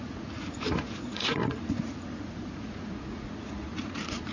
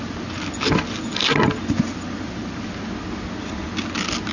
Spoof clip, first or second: first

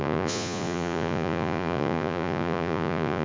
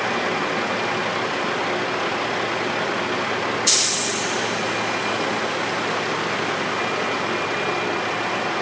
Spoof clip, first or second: first